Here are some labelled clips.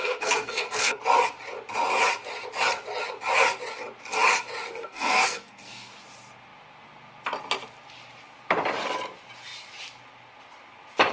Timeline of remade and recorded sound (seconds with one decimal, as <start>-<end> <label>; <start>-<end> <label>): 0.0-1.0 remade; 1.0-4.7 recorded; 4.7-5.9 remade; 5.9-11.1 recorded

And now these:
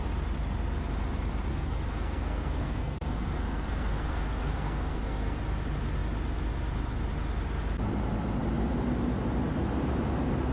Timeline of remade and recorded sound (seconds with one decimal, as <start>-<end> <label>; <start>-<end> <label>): 0.0-1.5 recorded; 1.5-5.4 remade; 5.4-10.5 recorded

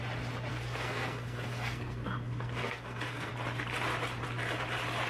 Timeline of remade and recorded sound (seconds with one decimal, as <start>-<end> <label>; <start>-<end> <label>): 0.0-0.5 recorded; 0.5-3.3 remade; 3.3-5.1 recorded

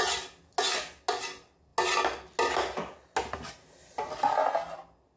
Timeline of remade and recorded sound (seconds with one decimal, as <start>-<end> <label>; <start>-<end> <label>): 0.0-5.2 recorded